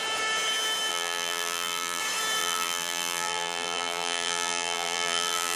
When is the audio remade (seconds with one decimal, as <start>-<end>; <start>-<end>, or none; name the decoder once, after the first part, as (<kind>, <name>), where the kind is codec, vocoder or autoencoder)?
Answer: 0.9-2.0 (vocoder, BigVGAN v2); 2.4-5.6